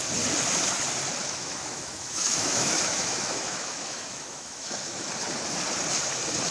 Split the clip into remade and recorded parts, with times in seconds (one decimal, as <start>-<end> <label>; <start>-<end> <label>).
0.0-1.2 recorded; 1.2-5.1 remade; 5.1-6.5 recorded